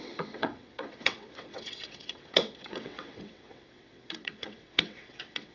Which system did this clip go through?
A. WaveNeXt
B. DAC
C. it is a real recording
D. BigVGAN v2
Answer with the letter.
A